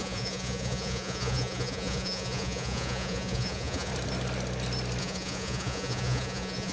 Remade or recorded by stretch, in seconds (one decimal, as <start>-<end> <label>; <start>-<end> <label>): 0.0-3.9 remade; 3.9-5.0 recorded; 5.0-6.7 remade